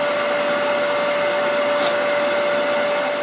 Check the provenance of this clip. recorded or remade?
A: recorded